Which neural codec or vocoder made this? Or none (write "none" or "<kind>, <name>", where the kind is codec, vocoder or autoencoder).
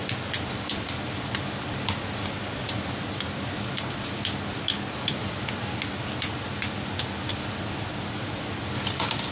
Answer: none